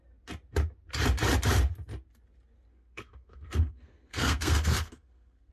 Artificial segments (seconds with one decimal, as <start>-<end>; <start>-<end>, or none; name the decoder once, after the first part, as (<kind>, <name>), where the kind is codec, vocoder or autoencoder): 2.7-5.5 (codec, SNAC)